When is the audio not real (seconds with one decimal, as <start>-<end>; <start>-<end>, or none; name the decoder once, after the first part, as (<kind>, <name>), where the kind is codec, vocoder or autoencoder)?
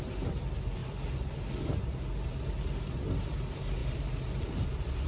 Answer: 3.8-5.1 (vocoder, BigVGAN v2)